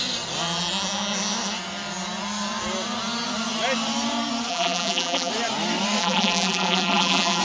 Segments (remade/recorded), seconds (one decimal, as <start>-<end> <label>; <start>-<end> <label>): 0.0-4.5 recorded; 4.5-5.3 remade; 5.3-6.0 recorded; 6.0-7.4 remade